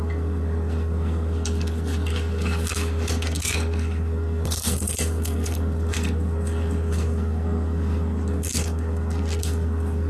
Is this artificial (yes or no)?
yes